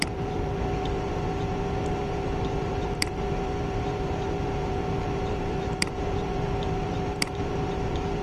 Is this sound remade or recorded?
remade